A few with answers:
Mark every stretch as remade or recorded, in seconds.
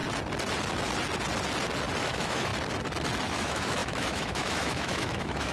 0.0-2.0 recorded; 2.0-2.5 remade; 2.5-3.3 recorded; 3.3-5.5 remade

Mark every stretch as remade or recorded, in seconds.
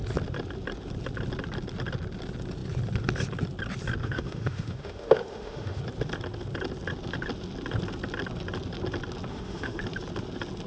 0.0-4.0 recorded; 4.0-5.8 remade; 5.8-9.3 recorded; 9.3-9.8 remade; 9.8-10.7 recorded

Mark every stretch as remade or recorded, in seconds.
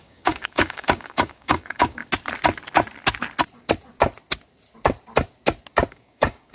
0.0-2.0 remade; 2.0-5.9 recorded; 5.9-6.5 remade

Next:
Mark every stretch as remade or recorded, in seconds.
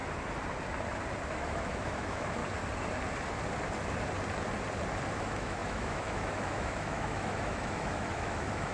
0.0-1.3 recorded; 1.3-2.4 remade; 2.4-5.1 recorded; 5.1-8.7 remade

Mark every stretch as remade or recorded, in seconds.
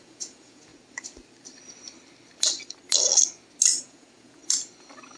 0.0-0.7 remade; 0.7-3.8 recorded; 3.8-4.4 remade; 4.4-5.2 recorded